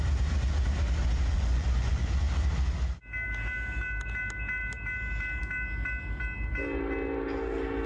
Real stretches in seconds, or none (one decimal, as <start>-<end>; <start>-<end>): 0.0-1.3; 2.0-7.9